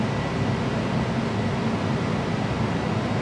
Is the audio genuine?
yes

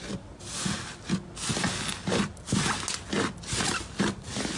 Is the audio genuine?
yes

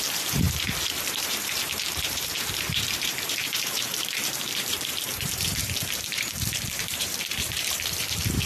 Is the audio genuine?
no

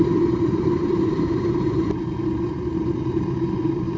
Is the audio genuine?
no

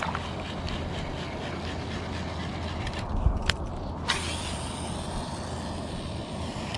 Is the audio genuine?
yes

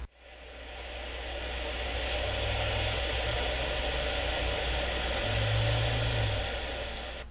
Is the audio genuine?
yes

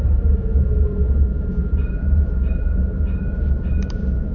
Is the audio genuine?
no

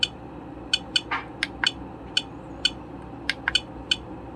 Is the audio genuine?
yes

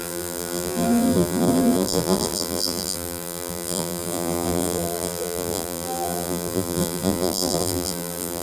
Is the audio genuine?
no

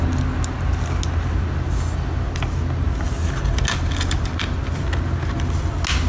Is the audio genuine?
yes